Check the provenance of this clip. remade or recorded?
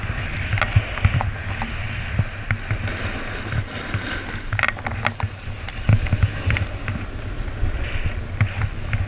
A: recorded